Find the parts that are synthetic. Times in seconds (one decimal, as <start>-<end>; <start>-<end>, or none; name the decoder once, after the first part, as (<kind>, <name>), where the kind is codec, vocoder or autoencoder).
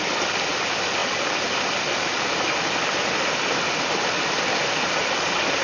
none